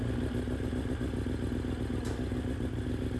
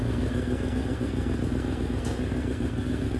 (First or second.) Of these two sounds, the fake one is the second